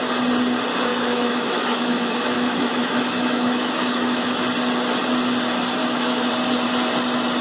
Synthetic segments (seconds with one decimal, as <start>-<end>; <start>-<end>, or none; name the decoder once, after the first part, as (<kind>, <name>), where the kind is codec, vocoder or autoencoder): 0.9-4.4 (autoencoder, DAC-VAE); 5.8-6.3